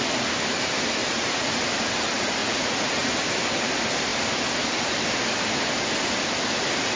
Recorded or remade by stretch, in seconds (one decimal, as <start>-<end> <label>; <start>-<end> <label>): 0.0-1.0 recorded; 1.0-1.6 remade; 1.6-2.4 recorded; 2.4-3.1 remade; 3.1-7.0 recorded

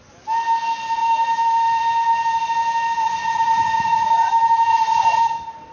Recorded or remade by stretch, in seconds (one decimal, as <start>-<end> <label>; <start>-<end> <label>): 0.0-3.0 recorded; 3.0-4.3 remade; 4.3-4.7 recorded; 4.7-5.2 remade; 5.2-5.7 recorded

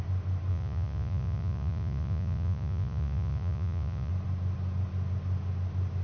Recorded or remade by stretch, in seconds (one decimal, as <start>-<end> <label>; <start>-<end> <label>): 0.0-0.5 recorded; 0.5-4.1 remade; 4.1-6.0 recorded

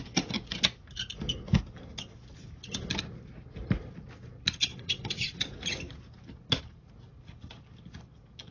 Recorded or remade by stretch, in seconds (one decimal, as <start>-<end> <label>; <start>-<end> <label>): 0.0-4.7 recorded; 4.7-5.8 remade; 5.8-8.5 recorded

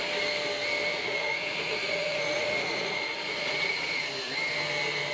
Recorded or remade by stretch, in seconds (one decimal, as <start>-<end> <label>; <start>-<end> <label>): 0.0-0.9 recorded; 0.9-4.0 remade; 4.0-5.1 recorded